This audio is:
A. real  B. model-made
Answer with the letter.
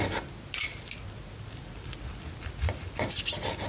A